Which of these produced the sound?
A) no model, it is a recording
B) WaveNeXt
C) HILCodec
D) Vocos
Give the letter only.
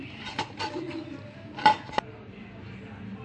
A